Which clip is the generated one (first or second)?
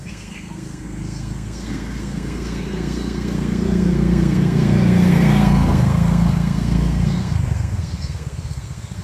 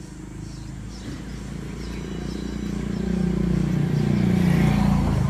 first